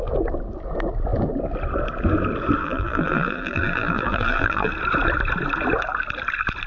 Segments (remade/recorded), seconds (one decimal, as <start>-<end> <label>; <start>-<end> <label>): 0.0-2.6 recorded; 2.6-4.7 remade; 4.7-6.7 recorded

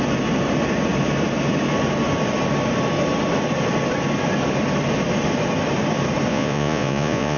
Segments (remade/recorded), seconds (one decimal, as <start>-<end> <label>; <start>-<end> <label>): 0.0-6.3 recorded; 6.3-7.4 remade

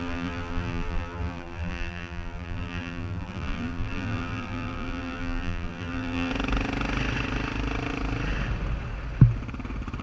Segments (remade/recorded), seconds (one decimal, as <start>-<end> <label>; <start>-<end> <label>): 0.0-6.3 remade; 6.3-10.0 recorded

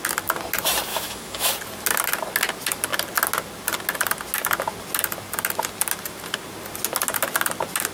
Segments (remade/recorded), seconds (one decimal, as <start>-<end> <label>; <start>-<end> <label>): 0.0-0.9 recorded; 0.9-1.5 remade; 1.5-7.9 recorded